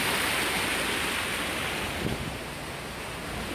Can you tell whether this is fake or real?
real